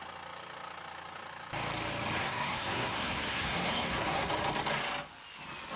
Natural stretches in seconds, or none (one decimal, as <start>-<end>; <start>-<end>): 0.0-2.2; 4.3-5.8